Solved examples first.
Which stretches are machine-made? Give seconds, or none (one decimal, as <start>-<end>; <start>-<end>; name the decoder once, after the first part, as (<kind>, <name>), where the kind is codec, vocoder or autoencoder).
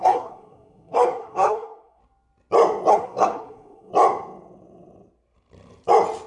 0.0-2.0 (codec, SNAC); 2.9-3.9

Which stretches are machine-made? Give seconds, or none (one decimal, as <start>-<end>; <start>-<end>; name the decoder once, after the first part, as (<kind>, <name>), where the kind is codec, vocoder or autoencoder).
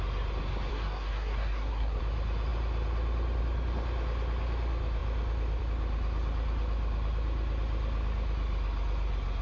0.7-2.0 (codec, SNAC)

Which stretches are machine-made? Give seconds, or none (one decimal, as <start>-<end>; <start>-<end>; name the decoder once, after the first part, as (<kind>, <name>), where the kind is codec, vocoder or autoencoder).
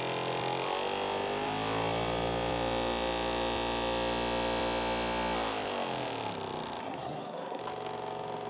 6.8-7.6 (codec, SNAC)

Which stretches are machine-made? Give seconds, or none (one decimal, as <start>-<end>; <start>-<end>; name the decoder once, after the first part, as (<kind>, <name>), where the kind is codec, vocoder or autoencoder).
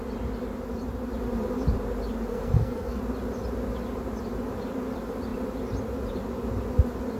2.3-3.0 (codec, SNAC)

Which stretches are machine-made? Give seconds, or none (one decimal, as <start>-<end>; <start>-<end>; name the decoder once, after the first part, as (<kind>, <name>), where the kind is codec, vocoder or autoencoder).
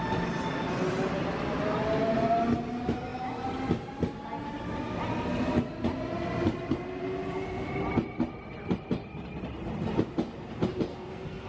10.9-11.5 (codec, SNAC)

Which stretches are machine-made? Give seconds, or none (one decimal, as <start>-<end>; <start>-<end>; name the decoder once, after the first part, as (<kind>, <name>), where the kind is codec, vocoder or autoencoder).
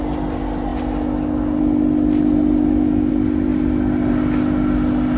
none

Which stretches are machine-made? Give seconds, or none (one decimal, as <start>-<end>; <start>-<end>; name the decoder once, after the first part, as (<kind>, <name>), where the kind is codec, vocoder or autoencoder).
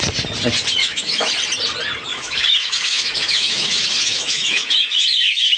0.8-1.3 (autoencoder, DAC-VAE); 2.1-5.6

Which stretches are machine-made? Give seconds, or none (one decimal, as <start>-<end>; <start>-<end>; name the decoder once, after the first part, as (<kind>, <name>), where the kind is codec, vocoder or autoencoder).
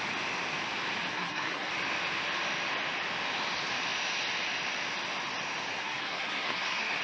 1.1-1.7 (codec, SNAC); 5.7-7.0